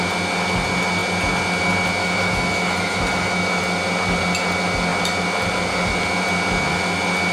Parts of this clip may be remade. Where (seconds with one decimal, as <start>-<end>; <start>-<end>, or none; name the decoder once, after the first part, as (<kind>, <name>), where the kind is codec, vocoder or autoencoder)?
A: 2.0-3.6 (autoencoder, DAC-VAE)